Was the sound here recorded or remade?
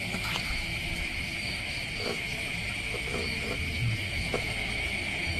remade